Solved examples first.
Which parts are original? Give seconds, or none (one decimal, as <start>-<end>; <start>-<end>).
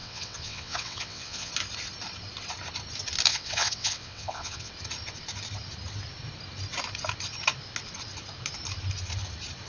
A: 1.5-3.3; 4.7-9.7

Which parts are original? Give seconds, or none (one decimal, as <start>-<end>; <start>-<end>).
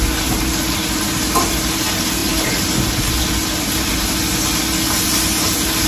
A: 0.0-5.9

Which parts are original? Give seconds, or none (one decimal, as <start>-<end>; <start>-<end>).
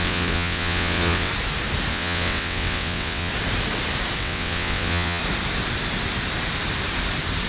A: 1.3-1.9; 3.3-4.2; 5.2-7.5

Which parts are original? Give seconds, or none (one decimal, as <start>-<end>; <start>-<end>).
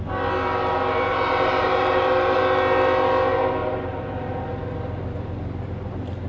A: 0.0-1.1; 2.4-3.6; 4.5-6.3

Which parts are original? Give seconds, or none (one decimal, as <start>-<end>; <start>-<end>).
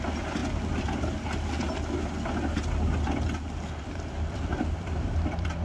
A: 0.4-3.8